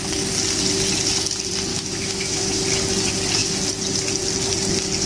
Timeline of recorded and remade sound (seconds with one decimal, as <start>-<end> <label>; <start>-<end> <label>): 0.0-1.7 recorded; 1.7-2.6 remade; 2.6-5.1 recorded